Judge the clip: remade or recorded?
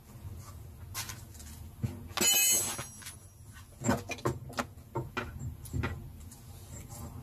recorded